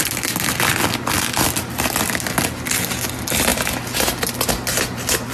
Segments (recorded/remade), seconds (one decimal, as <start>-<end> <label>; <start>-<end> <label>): 0.0-5.3 recorded